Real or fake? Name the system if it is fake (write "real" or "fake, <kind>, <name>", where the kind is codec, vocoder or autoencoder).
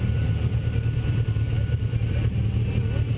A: real